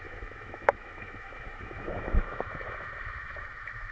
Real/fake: fake